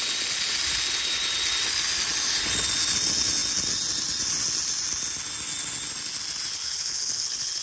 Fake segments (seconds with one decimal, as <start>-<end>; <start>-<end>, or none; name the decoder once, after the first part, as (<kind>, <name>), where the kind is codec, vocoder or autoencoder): 6.5-7.6 (codec, HILCodec)